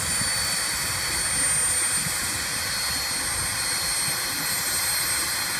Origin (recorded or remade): recorded